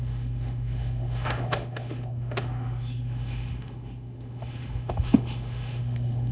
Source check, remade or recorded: remade